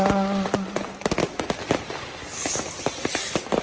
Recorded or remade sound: recorded